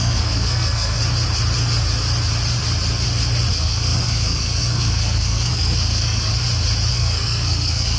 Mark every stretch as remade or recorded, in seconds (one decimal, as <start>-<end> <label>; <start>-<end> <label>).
0.0-1.0 remade; 1.0-3.5 recorded; 3.5-6.3 remade; 6.3-6.9 recorded; 6.9-8.0 remade